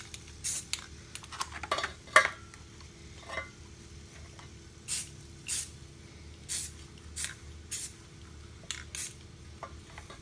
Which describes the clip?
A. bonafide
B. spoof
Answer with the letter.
A